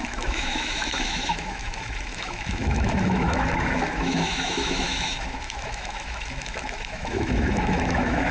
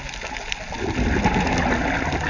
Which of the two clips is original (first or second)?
second